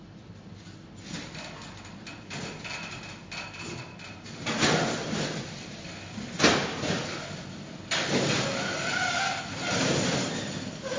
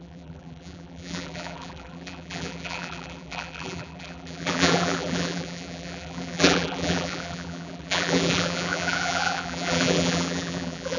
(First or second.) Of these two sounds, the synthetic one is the second